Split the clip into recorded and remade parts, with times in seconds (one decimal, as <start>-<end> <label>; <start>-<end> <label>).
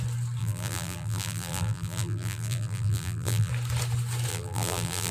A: 0.0-0.4 recorded; 0.4-3.5 remade; 3.5-4.3 recorded; 4.3-5.1 remade